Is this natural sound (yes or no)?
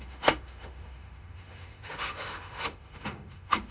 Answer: no